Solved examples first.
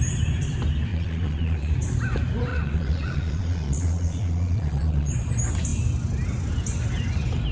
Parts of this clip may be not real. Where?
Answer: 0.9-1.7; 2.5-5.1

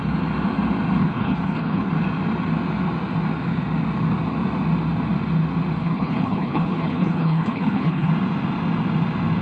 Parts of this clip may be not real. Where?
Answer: 1.0-1.9; 5.8-8.1

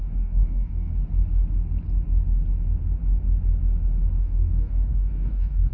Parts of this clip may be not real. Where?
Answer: 0.0-0.9; 4.2-5.7